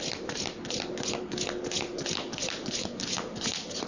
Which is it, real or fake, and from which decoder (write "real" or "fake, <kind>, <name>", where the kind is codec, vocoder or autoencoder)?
real